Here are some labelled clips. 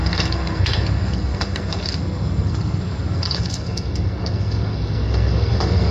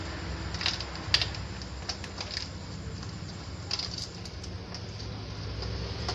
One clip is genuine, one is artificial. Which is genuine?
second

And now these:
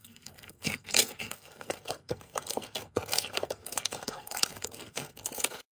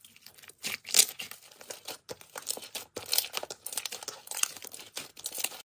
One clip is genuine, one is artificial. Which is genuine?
second